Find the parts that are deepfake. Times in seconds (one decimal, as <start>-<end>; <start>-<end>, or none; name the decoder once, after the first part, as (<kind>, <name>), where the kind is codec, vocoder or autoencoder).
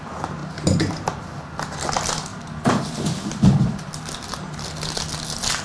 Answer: 0.4-1.2 (vocoder, BigVGAN v2)